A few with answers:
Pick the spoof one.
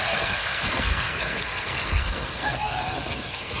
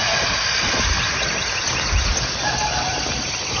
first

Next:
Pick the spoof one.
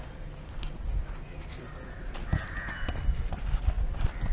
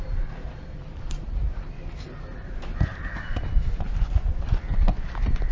second